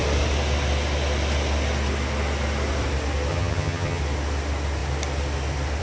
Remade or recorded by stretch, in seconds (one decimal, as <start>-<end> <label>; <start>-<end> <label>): 0.0-3.3 recorded; 3.3-4.0 remade; 4.0-5.8 recorded